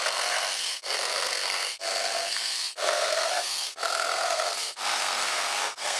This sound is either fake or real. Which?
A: fake